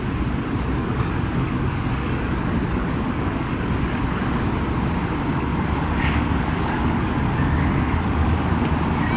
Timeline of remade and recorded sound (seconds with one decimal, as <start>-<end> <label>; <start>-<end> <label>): 0.0-0.8 recorded; 0.8-4.3 remade; 4.3-5.3 recorded; 5.3-8.6 remade; 8.6-9.2 recorded